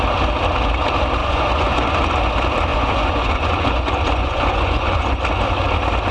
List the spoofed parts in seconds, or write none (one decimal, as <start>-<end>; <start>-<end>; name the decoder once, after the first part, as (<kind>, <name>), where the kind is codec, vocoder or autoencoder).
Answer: 1.2-1.9 (vocoder, Vocos); 2.7-5.2